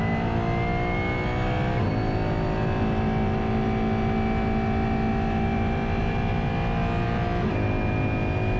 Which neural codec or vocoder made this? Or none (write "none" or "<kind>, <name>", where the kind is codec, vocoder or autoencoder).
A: none